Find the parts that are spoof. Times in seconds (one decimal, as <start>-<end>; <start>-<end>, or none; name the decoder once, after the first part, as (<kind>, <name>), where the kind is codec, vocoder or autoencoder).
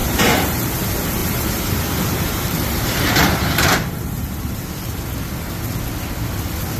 0.0-0.7 (vocoder, BigVGAN v2); 1.2-5.0